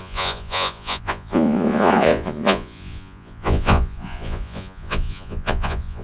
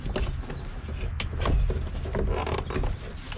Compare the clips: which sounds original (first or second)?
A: second